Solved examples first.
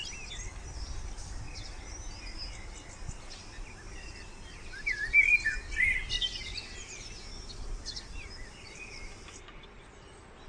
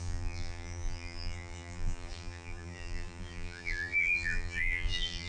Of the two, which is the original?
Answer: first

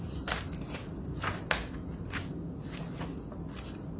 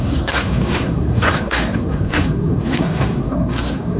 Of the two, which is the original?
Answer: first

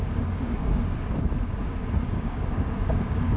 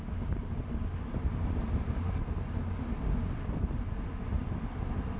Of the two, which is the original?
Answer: second